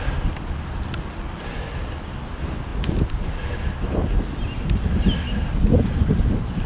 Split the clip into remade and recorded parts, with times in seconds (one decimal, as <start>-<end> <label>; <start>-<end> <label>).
0.0-6.7 recorded